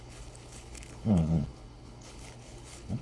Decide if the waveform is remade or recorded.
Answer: remade